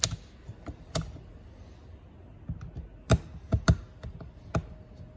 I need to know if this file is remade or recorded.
recorded